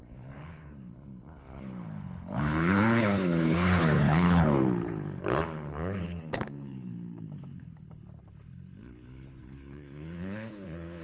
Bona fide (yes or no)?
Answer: no